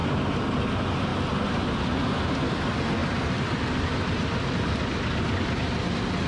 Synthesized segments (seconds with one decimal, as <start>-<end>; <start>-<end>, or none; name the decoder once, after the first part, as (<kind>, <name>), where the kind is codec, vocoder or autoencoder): 3.0-5.1 (vocoder, BigVGAN v2)